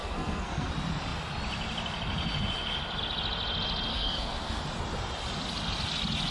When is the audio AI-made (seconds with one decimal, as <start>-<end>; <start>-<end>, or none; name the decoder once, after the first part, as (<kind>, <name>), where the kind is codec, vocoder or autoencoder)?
0.0-0.7 (codec, SNAC); 3.9-4.6